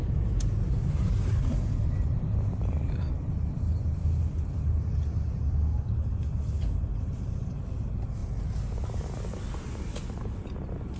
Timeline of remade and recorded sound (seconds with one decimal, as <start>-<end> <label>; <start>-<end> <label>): 0.0-11.0 recorded

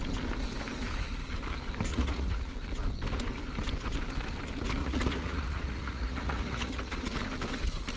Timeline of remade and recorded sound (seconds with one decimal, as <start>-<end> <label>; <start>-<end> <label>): 0.0-1.9 recorded; 1.9-2.5 remade; 2.5-4.8 recorded; 4.8-7.0 remade; 7.0-8.0 recorded

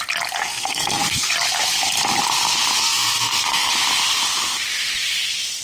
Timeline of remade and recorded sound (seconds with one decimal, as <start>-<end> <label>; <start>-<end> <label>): 0.0-0.4 recorded; 0.4-1.3 remade; 1.3-2.8 recorded; 2.8-3.7 remade; 3.7-5.6 recorded

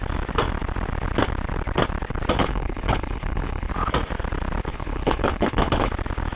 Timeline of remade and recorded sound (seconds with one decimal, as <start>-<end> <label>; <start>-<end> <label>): 0.0-2.4 recorded; 2.4-3.7 remade; 3.7-4.7 recorded; 4.7-5.9 remade; 5.9-6.4 recorded

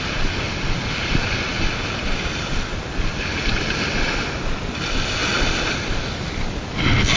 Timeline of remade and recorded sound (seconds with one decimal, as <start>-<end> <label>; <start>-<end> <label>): 0.0-7.2 recorded